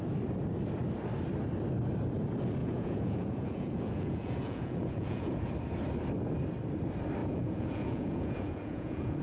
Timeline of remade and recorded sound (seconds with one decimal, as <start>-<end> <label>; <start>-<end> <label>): 0.0-2.6 recorded; 2.6-5.5 remade; 5.5-7.2 recorded; 7.2-9.2 remade